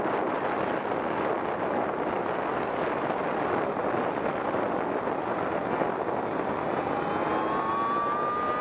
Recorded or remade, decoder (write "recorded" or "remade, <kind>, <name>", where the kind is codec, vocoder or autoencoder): recorded